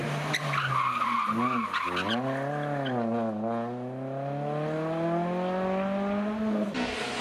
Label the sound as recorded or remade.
recorded